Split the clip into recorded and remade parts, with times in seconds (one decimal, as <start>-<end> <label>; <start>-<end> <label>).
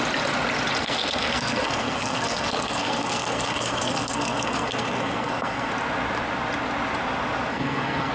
0.0-0.8 recorded; 0.8-5.7 remade; 5.7-7.5 recorded; 7.5-8.1 remade